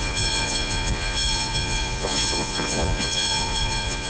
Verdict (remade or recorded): remade